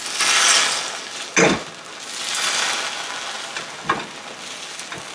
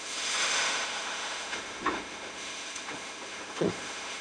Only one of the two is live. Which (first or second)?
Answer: first